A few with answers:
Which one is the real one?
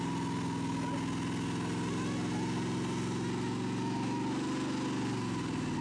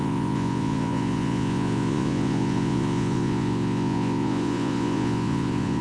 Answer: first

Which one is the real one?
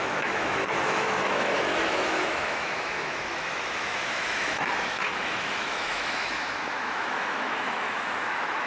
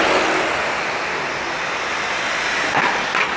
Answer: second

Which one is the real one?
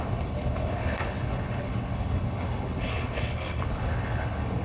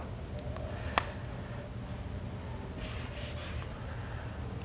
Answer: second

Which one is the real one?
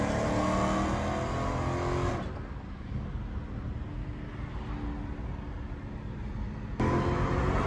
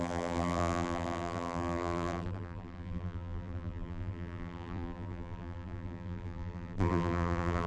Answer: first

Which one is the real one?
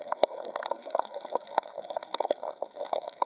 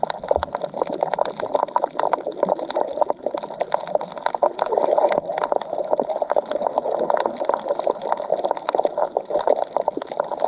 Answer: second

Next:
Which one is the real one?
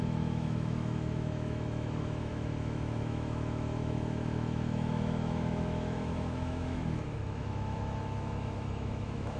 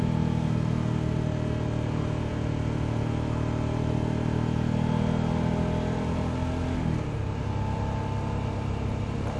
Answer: second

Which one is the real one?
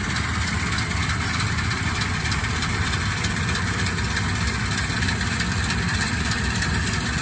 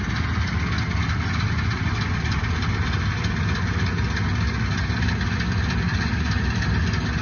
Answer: second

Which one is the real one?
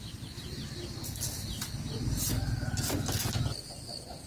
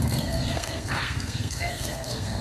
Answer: first